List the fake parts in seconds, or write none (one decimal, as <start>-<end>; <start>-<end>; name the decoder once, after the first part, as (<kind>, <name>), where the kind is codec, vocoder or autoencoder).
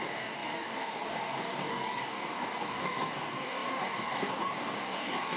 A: 0.0-5.4 (codec, DAC)